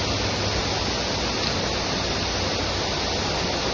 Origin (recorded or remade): recorded